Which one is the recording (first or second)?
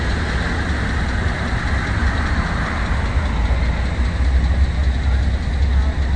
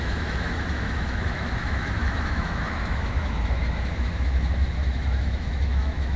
first